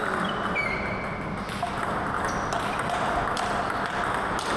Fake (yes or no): no